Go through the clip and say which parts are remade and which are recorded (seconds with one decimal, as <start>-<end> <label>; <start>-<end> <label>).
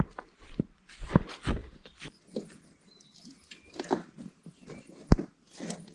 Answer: 0.0-5.9 recorded